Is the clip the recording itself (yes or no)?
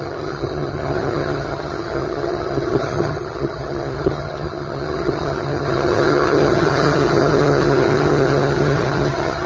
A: no